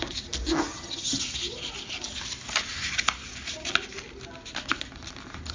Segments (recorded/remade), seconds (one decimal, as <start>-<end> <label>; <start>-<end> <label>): 0.0-0.7 recorded; 0.7-1.2 remade; 1.2-5.5 recorded